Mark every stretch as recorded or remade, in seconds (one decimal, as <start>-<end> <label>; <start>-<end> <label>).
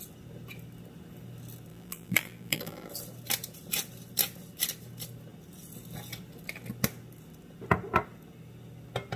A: 0.0-1.7 recorded; 1.7-2.9 remade; 2.9-9.2 recorded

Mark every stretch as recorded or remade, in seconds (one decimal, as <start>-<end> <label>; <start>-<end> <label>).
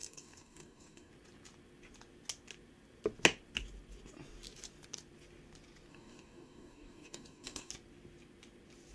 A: 0.0-1.1 remade; 1.1-5.9 recorded; 5.9-7.7 remade; 7.7-8.9 recorded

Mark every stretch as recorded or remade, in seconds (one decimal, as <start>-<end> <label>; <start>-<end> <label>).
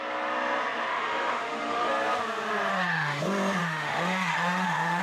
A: 0.0-0.9 recorded; 0.9-1.9 remade; 1.9-2.7 recorded; 2.7-3.2 remade; 3.2-3.6 recorded; 3.6-5.0 remade